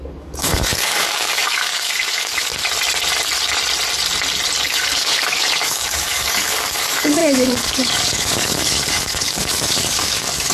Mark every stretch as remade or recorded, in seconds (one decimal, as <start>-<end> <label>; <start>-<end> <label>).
0.0-2.5 remade; 2.5-4.6 recorded; 4.6-10.5 remade